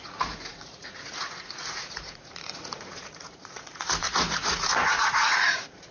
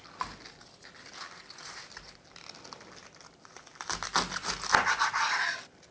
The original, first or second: second